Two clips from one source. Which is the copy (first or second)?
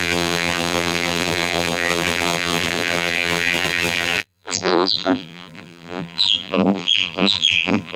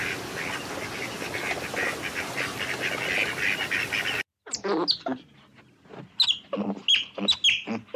first